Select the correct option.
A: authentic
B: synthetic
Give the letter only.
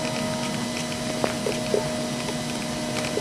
A